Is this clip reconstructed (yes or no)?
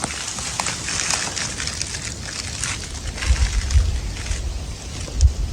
no